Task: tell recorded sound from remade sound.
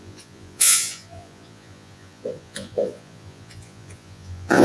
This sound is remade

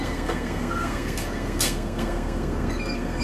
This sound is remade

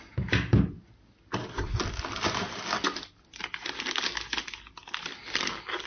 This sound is recorded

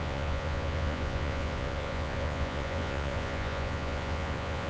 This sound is remade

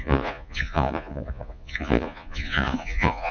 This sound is remade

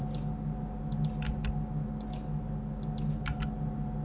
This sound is recorded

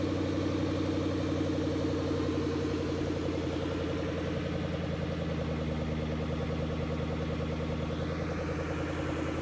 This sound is recorded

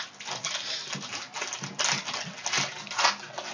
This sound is recorded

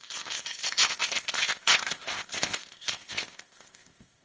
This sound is remade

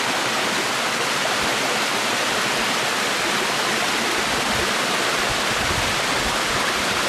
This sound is recorded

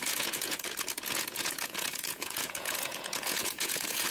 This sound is remade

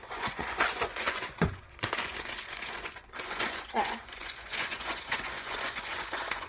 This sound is remade